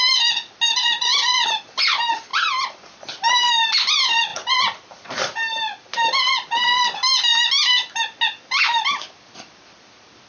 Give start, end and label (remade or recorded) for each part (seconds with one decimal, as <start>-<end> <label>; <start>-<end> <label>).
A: 0.0-7.3 remade; 7.3-8.6 recorded; 8.6-10.3 remade